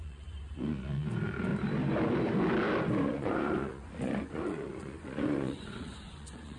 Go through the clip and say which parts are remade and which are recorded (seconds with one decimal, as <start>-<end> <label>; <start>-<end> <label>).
0.0-1.5 remade; 1.5-3.0 recorded; 3.0-6.6 remade